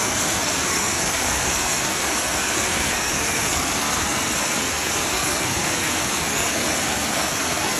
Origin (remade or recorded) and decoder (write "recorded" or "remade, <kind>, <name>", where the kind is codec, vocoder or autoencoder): remade, codec, SNAC